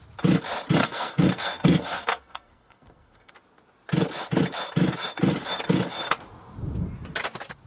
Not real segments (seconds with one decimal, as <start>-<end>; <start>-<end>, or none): 0.8-3.3

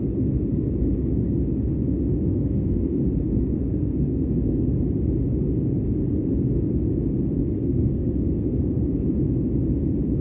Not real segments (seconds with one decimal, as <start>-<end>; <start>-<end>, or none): 2.3-3.0; 3.4-4.7; 7.4-8.8

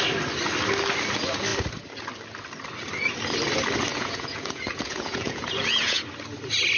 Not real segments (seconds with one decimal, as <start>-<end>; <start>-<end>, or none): 3.9-6.0